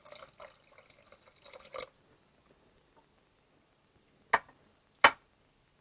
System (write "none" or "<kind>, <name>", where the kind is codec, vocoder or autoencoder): none